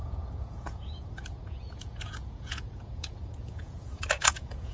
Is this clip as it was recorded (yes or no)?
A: no